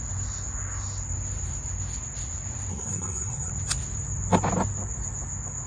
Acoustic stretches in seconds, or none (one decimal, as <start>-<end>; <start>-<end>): 0.0-2.7; 3.5-5.7